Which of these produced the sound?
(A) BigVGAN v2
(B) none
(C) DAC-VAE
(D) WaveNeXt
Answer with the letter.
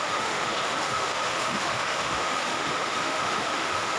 C